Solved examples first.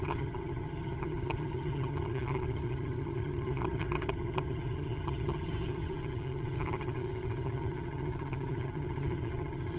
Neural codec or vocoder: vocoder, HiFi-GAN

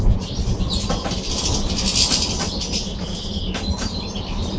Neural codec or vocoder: none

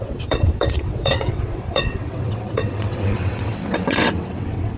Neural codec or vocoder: vocoder, WaveNeXt